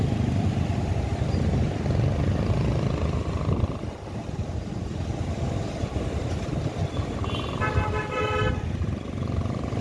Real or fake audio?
real